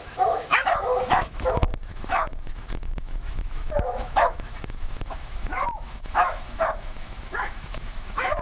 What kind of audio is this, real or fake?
fake